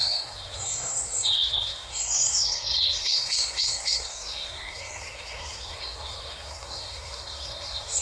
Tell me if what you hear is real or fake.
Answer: fake